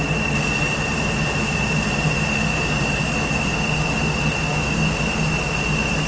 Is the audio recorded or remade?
recorded